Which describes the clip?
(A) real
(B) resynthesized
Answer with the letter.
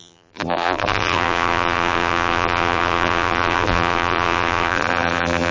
B